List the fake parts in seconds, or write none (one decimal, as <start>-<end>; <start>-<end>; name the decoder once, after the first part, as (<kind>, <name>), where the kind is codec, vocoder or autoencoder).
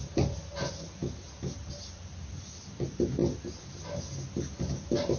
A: none